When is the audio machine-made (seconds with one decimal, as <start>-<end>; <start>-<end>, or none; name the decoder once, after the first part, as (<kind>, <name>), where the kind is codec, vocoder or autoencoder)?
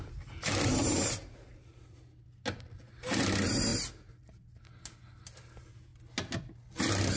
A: none